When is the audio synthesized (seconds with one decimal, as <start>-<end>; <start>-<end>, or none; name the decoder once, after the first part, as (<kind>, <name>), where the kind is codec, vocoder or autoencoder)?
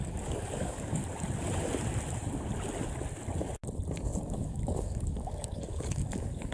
0.0-1.0 (codec, DAC); 4.2-6.5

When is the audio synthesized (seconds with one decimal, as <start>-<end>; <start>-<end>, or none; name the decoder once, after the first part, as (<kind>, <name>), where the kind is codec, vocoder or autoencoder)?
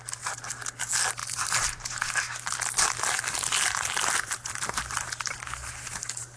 none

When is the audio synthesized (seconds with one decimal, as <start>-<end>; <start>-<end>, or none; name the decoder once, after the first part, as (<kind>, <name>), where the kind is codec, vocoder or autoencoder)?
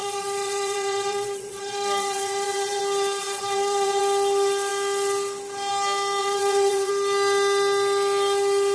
0.0-2.8 (vocoder, WaveNeXt); 3.2-4.0; 6.2-6.9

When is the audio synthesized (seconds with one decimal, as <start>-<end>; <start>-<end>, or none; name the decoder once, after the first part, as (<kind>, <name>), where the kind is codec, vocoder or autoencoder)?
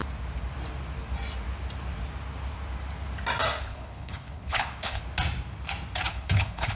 3.6-5.0 (codec, HILCodec); 6.1-6.8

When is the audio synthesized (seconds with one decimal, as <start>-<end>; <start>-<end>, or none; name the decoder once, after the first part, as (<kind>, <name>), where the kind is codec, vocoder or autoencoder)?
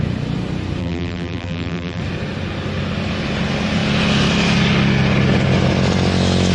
0.8-2.0 (vocoder, BigVGAN v2)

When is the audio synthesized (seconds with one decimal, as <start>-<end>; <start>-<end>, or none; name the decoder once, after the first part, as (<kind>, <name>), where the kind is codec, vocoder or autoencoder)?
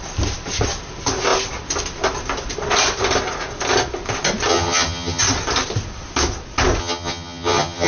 4.5-5.2 (vocoder, HiFi-GAN); 6.8-7.9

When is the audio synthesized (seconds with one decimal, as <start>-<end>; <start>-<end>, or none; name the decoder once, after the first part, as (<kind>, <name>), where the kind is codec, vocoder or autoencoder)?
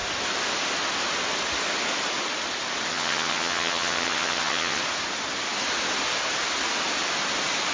2.9-4.8 (vocoder, HiFi-GAN)